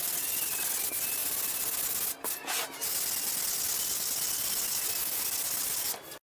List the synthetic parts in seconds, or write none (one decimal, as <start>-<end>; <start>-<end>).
none